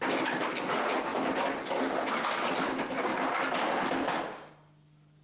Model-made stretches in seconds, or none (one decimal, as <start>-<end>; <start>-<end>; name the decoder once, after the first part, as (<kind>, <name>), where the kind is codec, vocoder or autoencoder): none